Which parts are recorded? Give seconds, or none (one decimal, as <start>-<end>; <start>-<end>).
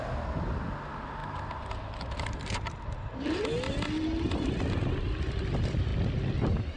0.0-1.2; 2.8-6.8